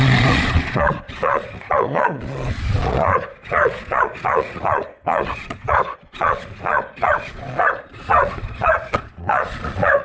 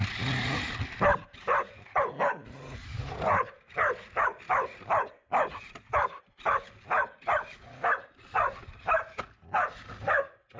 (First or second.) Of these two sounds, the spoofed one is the first